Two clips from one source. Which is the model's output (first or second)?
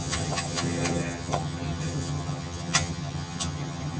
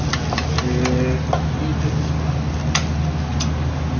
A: first